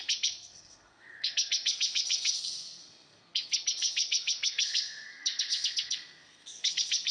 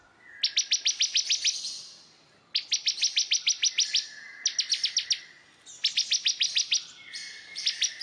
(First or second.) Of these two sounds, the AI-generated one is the first